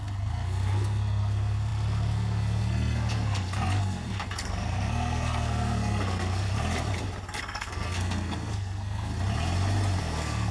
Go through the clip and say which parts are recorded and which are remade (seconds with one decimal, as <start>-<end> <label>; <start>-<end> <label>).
0.0-6.5 remade; 6.5-7.4 recorded; 7.4-9.1 remade; 9.1-10.0 recorded; 10.0-10.5 remade